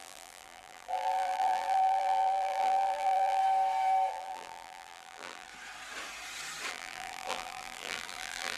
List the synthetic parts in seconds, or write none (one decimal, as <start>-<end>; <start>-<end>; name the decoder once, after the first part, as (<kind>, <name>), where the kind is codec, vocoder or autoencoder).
0.0-3.4 (vocoder, BigVGAN v2); 4.1-5.5; 6.7-8.6